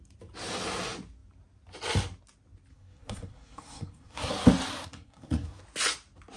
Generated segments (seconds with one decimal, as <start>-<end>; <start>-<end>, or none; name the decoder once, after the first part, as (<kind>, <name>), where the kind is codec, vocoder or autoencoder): 2.7-4.3 (codec, SNAC); 4.7-5.6